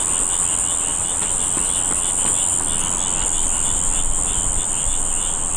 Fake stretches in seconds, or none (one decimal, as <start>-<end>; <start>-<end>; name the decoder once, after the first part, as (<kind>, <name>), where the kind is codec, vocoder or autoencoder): none